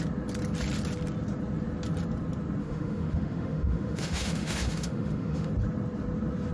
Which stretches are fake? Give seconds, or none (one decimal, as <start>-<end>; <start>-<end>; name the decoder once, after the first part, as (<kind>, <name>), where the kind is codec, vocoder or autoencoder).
2.6-5.5 (autoencoder, DAC-VAE)

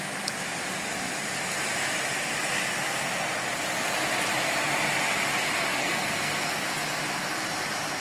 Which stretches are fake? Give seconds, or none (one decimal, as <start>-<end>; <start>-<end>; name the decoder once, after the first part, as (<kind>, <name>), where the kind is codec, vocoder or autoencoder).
5.8-6.5 (codec, SNAC)

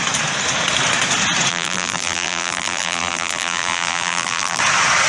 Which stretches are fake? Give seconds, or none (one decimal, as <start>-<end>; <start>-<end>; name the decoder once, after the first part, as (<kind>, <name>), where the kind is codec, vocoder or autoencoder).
1.5-4.6 (vocoder, BigVGAN v2)

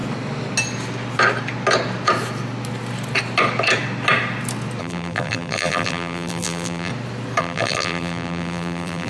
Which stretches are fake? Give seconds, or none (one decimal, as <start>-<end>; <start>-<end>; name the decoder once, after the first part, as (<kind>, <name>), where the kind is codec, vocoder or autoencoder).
4.8-6.9 (vocoder, BigVGAN v2); 7.4-9.1

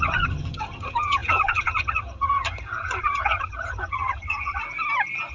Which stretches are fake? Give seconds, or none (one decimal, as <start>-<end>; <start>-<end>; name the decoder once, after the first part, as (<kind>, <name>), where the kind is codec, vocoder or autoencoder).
0.0-4.6 (vocoder, HiFi-GAN)

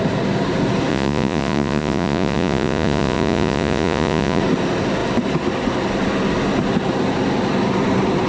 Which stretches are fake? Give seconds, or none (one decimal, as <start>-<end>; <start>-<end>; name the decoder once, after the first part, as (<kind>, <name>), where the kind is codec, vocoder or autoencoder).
0.9-4.4 (vocoder, Vocos)

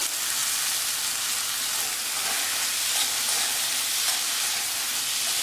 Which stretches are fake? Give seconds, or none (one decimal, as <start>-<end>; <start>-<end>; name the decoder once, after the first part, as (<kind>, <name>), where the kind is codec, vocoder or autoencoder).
none